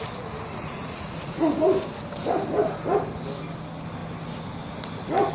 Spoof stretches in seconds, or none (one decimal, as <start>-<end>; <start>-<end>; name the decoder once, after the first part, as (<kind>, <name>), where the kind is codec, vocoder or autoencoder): 0.5-1.5 (vocoder, Vocos)